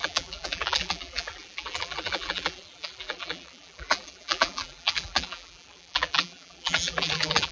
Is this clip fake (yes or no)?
yes